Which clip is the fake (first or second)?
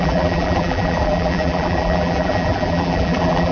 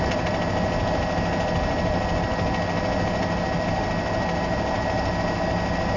first